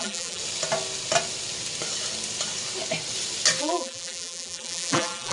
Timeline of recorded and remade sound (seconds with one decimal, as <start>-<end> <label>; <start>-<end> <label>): 0.0-0.4 remade; 0.4-3.6 recorded; 3.6-5.3 remade